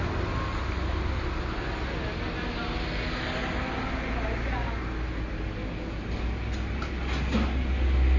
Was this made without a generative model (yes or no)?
yes